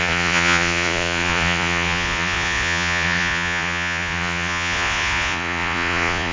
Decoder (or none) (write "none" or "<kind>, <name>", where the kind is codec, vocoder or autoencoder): vocoder, Vocos